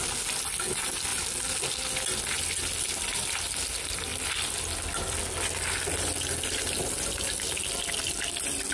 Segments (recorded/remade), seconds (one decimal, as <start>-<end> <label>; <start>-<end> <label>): 0.0-4.1 recorded; 4.1-5.2 remade; 5.2-8.7 recorded